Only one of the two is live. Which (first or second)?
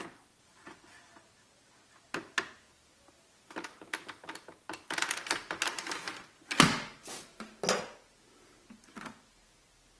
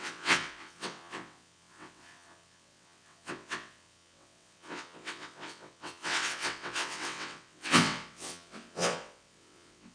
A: first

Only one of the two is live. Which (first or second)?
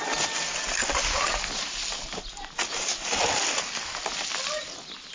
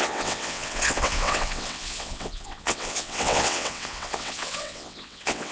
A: first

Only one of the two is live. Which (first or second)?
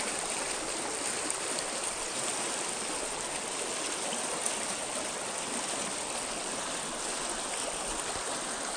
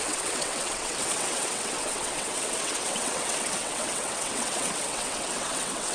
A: first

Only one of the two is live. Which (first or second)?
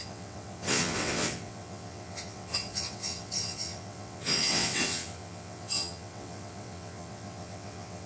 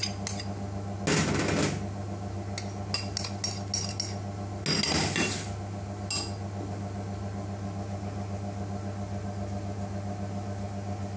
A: second